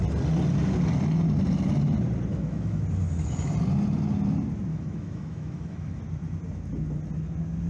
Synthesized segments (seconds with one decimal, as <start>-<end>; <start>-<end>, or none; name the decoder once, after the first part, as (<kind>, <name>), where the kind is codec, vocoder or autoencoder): 2.3-2.8 (autoencoder, DAC-VAE); 4.7-6.0